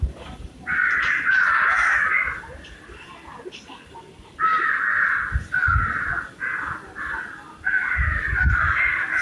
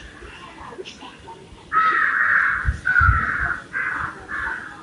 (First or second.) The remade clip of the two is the first